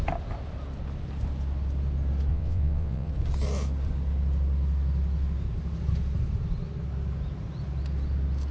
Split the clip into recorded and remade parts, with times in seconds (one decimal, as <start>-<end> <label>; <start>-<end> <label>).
0.0-2.3 recorded; 2.3-3.1 remade; 3.1-8.5 recorded